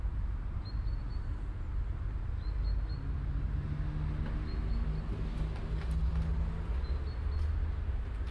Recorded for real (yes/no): yes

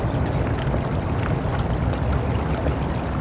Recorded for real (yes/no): yes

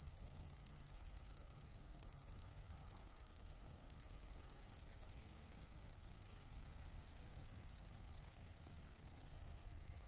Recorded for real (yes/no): no